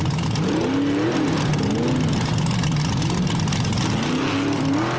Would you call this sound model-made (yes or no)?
no